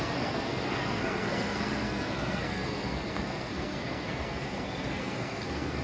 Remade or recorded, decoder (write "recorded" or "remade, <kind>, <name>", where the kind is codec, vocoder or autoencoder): remade, codec, SNAC